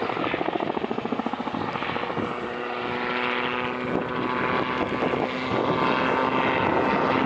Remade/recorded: recorded